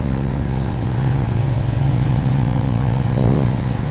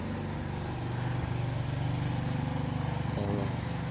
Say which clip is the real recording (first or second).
second